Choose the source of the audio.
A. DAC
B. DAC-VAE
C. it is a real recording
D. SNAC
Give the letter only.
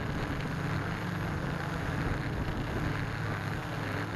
C